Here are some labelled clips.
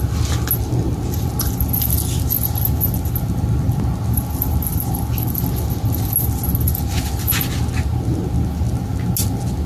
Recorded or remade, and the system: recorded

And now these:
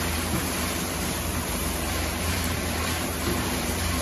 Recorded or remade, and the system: remade, vocoder, BigVGAN v2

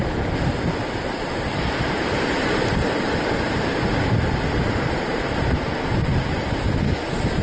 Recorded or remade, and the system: remade, vocoder, BigVGAN v2